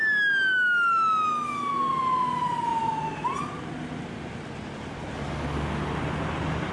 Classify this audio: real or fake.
real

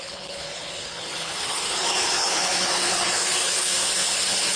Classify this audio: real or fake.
fake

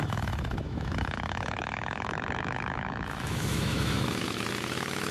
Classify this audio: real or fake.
fake